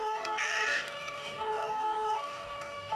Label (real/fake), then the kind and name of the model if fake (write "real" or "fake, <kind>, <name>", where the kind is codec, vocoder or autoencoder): fake, codec, DAC